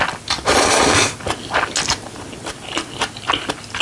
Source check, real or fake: real